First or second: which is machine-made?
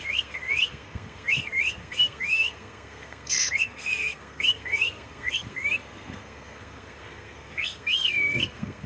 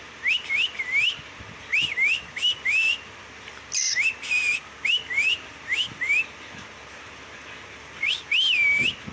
first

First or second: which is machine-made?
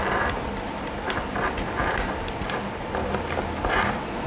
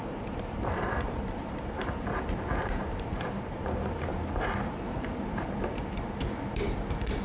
second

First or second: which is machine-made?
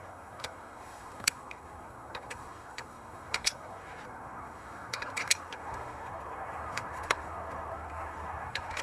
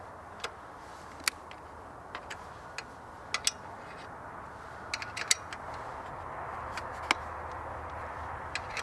first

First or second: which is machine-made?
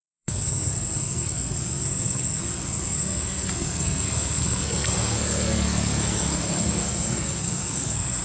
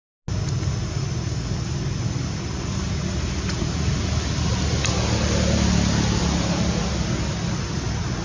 first